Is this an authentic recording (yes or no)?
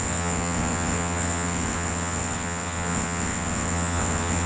no